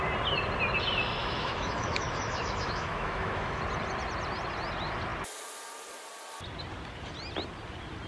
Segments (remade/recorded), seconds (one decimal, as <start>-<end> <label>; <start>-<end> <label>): 0.0-1.2 recorded; 1.2-3.6 remade; 3.6-8.1 recorded